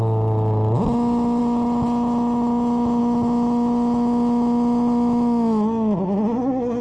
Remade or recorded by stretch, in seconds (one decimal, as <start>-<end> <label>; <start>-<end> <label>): 0.0-6.8 recorded